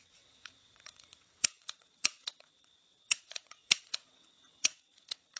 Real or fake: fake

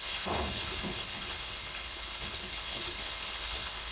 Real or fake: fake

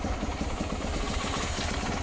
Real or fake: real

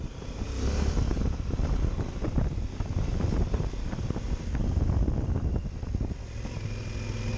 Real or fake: real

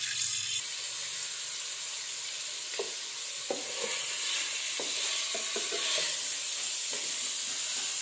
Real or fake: real